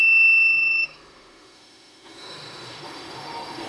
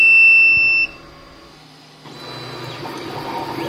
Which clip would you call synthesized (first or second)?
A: first